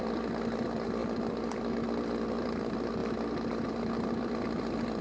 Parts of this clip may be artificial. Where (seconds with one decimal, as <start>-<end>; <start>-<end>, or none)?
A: 0.0-3.0; 3.7-5.0